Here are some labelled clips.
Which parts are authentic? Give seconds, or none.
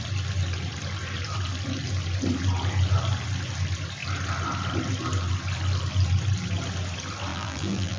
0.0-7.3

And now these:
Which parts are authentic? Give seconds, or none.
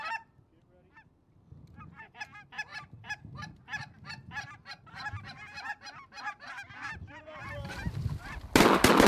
0.0-2.7; 3.6-9.1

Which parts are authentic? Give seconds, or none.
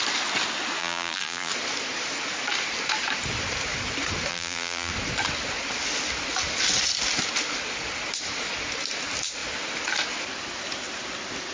0.0-0.8; 1.5-4.3; 4.9-11.5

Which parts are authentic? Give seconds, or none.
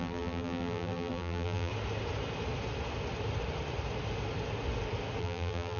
1.7-5.2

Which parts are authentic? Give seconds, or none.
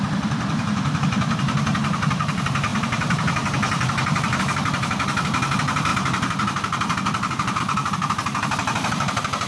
none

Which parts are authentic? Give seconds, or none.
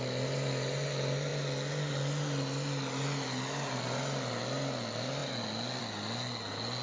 0.0-6.8